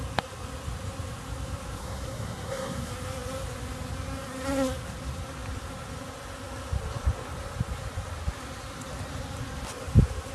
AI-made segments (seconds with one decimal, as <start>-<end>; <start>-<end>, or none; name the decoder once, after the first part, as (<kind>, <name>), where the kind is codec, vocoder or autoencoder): 1.8-2.9 (codec, SNAC)

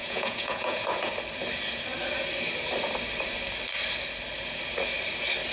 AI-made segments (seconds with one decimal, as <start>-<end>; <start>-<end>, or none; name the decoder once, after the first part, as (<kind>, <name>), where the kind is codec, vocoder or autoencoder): 0.0-1.1 (vocoder, Vocos)

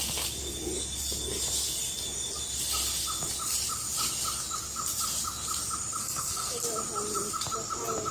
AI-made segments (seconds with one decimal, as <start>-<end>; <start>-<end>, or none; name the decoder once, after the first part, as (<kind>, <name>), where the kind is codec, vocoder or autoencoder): 6.0-6.6 (codec, SNAC)